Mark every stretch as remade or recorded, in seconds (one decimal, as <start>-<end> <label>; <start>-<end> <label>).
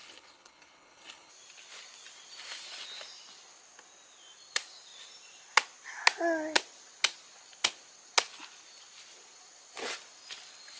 0.0-1.3 remade; 1.3-10.8 recorded